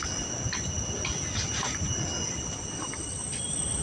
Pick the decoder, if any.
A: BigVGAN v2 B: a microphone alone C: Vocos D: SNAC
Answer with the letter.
B